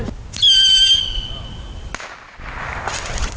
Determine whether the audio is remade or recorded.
recorded